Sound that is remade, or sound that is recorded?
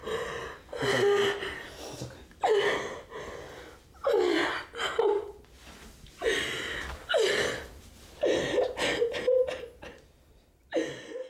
recorded